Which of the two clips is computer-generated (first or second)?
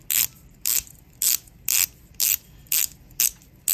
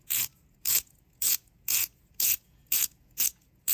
second